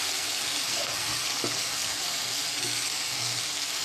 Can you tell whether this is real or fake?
fake